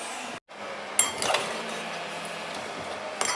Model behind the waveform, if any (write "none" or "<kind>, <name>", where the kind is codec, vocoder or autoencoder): none